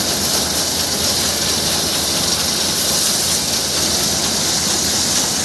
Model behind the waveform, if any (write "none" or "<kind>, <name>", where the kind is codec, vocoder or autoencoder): none